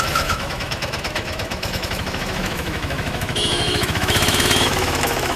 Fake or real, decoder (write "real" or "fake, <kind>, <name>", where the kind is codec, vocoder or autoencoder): fake, autoencoder, DAC-VAE